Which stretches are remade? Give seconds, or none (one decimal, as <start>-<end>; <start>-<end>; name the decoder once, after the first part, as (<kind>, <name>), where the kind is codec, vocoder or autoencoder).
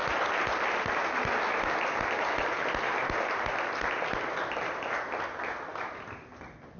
none